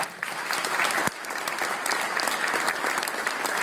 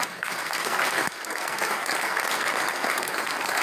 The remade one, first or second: second